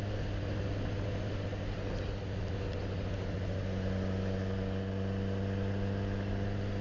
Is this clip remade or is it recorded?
recorded